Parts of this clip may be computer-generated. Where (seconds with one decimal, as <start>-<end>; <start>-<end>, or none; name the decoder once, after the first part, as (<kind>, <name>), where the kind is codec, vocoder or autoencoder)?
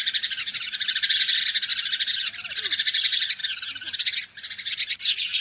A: 1.7-2.3 (vocoder, BigVGAN v2)